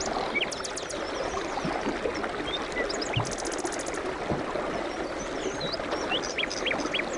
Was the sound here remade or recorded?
recorded